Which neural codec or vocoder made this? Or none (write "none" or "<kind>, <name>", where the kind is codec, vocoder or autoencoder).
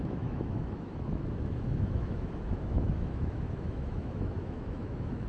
autoencoder, DAC-VAE